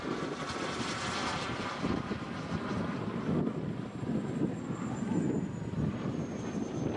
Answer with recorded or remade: recorded